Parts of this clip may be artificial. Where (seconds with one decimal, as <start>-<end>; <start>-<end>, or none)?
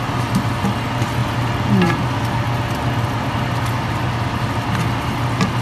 none